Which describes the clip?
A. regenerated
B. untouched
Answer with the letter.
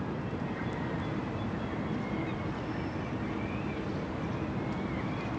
B